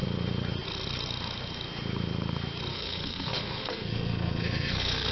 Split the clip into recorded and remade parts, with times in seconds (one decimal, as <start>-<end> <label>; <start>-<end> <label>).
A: 0.0-2.7 recorded; 2.7-5.1 remade